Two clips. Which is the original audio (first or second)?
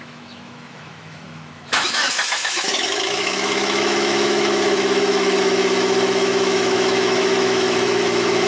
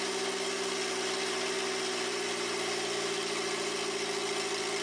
second